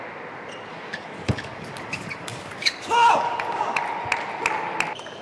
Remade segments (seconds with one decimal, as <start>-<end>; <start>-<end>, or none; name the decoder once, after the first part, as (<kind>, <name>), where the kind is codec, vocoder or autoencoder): 0.7-3.8 (codec, DAC)